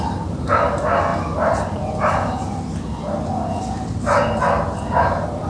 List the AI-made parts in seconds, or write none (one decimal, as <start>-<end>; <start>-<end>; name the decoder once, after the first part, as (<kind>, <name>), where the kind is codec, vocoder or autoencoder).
none